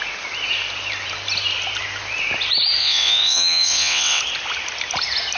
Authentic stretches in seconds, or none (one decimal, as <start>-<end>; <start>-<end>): 0.0-2.8; 4.2-5.4